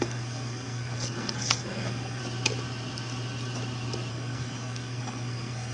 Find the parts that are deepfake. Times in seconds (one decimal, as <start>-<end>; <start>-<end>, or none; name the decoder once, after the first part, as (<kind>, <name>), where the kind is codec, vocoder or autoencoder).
0.0-2.2 (codec, SNAC); 4.1-5.7